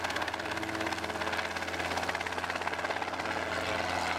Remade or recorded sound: recorded